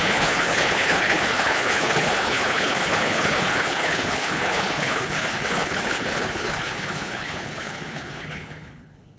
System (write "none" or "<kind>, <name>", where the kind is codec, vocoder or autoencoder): codec, HILCodec